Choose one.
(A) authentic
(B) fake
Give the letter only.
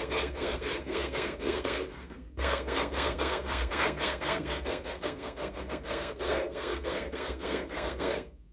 B